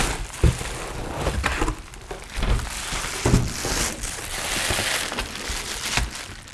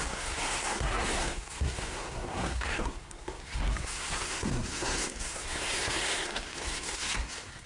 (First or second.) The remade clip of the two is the second